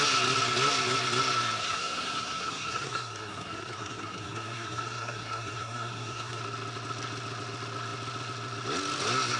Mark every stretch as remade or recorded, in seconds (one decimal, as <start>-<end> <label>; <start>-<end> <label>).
0.0-1.6 recorded; 1.6-6.4 remade; 6.4-9.4 recorded